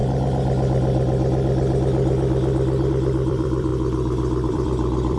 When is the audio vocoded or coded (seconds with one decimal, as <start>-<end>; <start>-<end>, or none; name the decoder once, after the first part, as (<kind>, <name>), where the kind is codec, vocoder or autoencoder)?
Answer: 2.9-3.7 (vocoder, BigVGAN v2); 4.5-5.2